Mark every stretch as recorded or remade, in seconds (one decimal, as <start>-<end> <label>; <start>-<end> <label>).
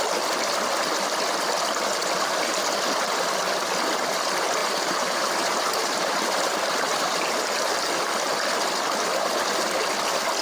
0.0-4.6 recorded; 4.6-7.7 remade; 7.7-10.4 recorded